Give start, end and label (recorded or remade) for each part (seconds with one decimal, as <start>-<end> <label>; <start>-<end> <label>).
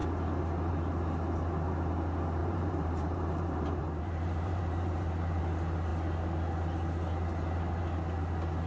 0.0-2.4 recorded; 2.4-5.4 remade; 5.4-8.7 recorded